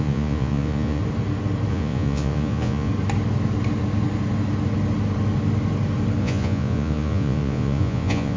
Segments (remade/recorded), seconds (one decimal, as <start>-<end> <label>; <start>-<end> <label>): 0.0-1.0 remade; 1.0-1.7 recorded; 1.7-2.9 remade; 2.9-6.2 recorded; 6.2-8.4 remade